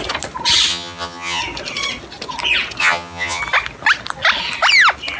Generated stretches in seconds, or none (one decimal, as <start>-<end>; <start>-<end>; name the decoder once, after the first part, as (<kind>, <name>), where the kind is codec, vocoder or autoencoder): 0.7-1.4 (vocoder, HiFi-GAN); 2.8-3.4